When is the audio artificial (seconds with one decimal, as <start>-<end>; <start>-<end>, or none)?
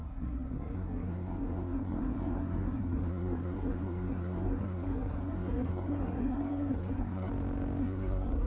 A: 0.0-7.3; 7.8-8.5